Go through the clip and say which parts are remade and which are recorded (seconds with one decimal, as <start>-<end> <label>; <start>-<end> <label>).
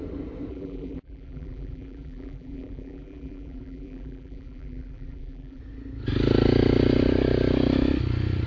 0.0-0.5 recorded; 0.5-5.6 remade; 5.6-8.5 recorded